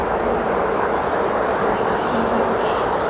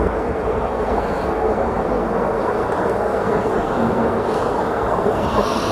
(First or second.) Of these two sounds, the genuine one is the first